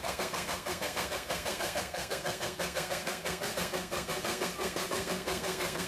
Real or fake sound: fake